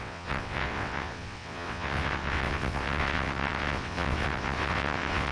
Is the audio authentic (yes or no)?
no